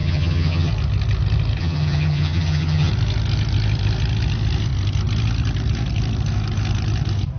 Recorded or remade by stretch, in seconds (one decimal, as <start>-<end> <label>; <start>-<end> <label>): 0.0-0.7 remade; 0.7-1.6 recorded; 1.6-2.9 remade; 2.9-7.4 recorded